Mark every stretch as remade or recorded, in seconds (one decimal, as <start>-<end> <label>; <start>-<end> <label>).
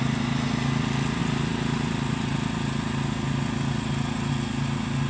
0.0-5.1 recorded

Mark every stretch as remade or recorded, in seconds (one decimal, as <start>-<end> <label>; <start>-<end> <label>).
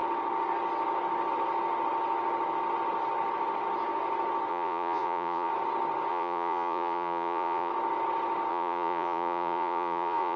0.0-4.5 recorded; 4.5-5.5 remade; 5.5-6.1 recorded; 6.1-7.7 remade; 7.7-8.5 recorded; 8.5-10.4 remade